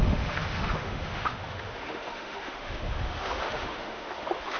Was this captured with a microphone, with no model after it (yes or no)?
no